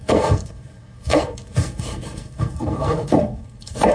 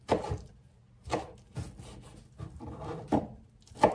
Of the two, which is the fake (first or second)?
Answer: first